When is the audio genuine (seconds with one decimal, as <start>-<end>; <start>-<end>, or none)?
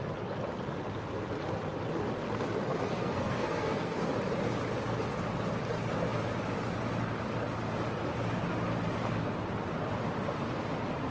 0.0-2.7; 4.1-11.1